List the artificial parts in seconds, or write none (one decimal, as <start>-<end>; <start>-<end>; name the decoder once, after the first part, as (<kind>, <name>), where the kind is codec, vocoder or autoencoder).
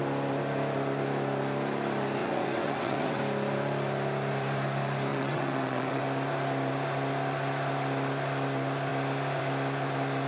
2.2-3.2 (vocoder, WaveNeXt); 5.1-6.0